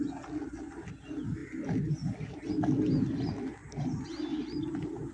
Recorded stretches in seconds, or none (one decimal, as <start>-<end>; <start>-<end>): 0.0-5.1